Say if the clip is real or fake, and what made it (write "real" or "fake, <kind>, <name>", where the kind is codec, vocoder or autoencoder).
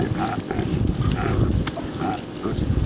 real